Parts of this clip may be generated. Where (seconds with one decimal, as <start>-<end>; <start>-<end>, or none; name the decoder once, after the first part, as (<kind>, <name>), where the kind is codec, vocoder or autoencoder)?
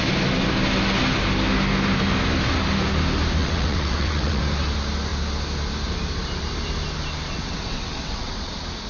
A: 3.4-4.4 (vocoder, WaveNeXt); 7.3-8.5